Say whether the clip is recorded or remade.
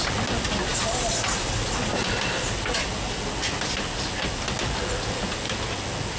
recorded